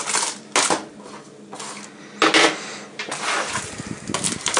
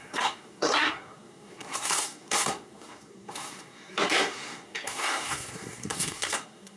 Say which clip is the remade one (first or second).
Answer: second